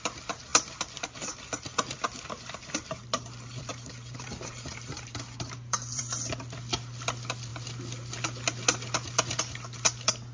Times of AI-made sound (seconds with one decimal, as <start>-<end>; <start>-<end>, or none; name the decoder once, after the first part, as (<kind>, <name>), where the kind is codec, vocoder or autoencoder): 3.7-6.0 (vocoder, BigVGAN v2)